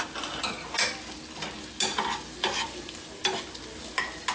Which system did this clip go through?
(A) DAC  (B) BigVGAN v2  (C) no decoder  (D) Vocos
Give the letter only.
C